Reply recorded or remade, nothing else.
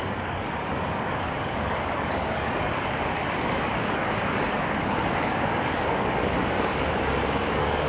remade